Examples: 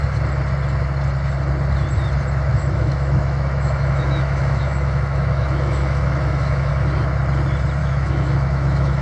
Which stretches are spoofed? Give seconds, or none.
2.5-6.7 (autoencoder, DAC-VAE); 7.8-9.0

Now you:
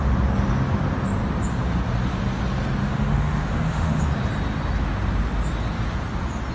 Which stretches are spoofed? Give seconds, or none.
2.8-4.0 (autoencoder, DAC-VAE)

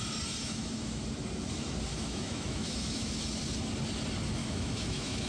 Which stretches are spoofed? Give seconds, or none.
0.4-1.0 (autoencoder, DAC-VAE); 1.9-3.1; 4.4-5.3